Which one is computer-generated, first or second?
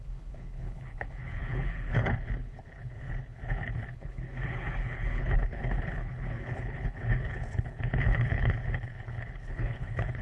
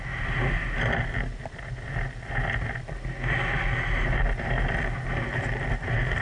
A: first